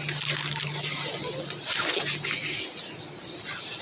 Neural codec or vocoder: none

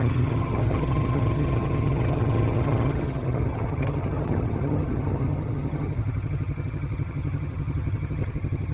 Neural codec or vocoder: vocoder, HiFi-GAN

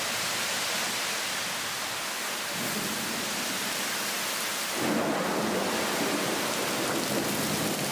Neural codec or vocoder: none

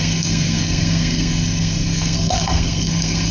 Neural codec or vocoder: codec, SNAC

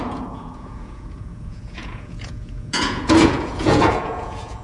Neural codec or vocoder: vocoder, Vocos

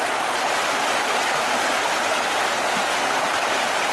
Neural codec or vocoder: none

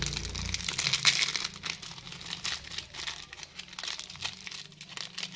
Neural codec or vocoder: none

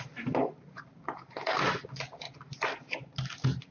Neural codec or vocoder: none